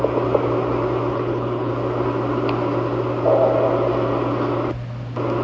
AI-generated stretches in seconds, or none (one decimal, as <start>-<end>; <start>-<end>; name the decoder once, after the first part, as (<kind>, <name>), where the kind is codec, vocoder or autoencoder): 1.1-1.7 (codec, HILCodec)